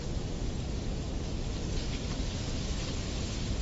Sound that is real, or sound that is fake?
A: real